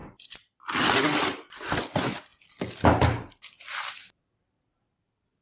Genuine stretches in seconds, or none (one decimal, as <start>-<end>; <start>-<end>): 0.0-5.4